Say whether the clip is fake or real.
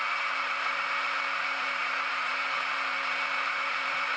fake